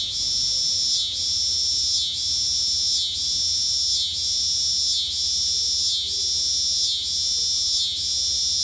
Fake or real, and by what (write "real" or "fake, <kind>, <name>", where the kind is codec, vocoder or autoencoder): real